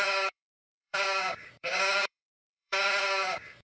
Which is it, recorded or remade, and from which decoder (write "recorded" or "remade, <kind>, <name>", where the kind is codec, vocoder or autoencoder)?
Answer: remade, codec, DAC